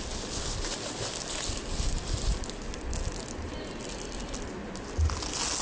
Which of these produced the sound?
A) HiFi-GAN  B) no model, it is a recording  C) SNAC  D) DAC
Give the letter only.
B